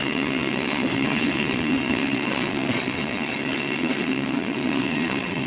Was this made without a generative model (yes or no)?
no